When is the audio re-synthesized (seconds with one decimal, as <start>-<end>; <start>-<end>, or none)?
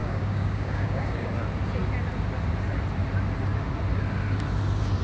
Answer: 0.0-1.3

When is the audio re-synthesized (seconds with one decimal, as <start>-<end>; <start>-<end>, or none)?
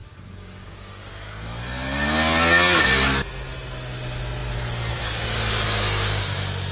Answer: 0.0-1.1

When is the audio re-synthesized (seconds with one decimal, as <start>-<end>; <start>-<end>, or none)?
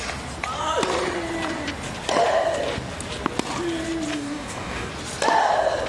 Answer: 4.1-4.9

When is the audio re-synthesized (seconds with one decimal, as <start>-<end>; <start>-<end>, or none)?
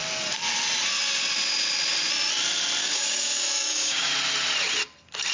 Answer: 2.8-4.1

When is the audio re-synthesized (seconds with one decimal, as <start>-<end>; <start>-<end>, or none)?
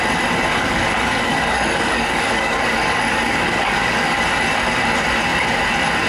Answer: 0.5-4.2